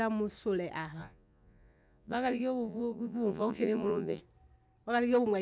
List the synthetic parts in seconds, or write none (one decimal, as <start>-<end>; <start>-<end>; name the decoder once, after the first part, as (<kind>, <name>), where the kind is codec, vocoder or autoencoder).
1.0-4.2 (vocoder, Vocos)